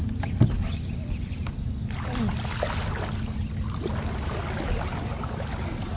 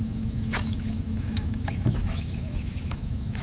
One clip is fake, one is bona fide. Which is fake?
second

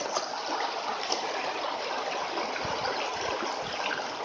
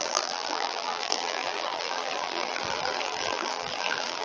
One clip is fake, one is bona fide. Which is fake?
second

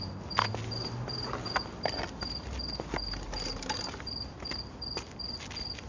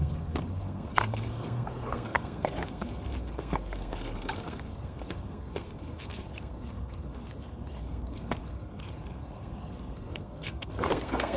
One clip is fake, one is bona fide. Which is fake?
second